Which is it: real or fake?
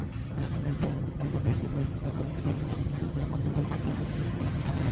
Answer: fake